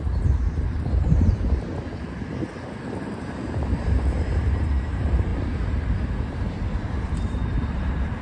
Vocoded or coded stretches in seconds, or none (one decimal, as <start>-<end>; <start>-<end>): 0.0-1.7; 3.2-8.2